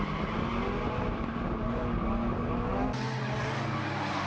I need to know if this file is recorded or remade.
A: recorded